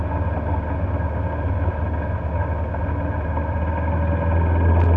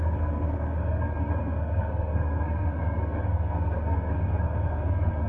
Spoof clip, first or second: second